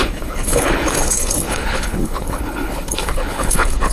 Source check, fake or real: fake